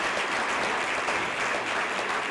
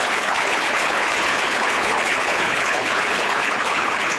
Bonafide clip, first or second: first